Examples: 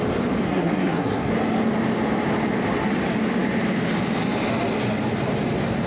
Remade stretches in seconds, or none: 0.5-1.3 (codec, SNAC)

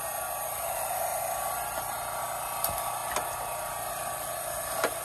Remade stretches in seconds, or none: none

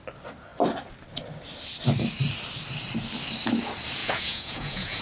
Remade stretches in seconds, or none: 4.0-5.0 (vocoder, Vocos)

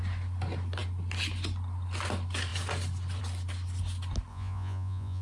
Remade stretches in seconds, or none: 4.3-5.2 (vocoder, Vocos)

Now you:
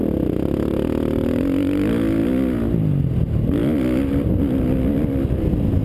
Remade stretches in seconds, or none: none